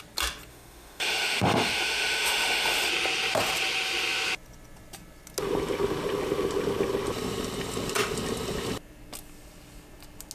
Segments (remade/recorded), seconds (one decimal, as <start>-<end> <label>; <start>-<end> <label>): 0.0-0.5 recorded; 0.5-2.9 remade; 2.9-10.3 recorded